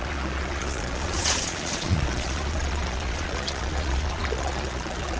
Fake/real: fake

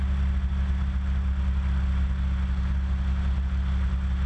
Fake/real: real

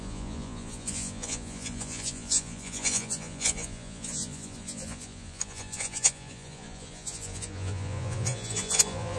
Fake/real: fake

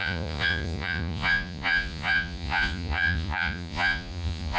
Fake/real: fake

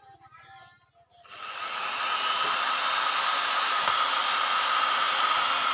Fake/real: real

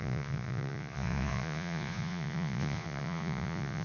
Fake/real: fake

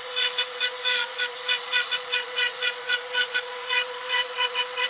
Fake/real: fake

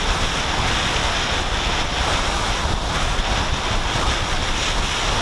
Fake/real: real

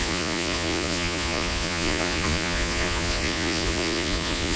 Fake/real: fake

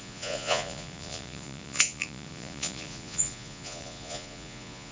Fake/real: fake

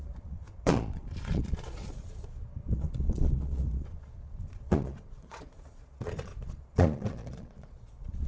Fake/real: fake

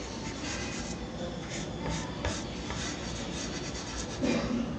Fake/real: real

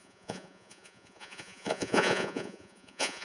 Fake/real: fake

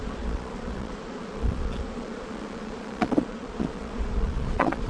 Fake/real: fake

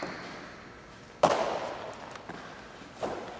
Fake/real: real